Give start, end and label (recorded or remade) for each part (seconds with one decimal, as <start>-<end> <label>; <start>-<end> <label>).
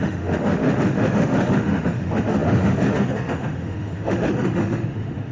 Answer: 0.0-5.3 remade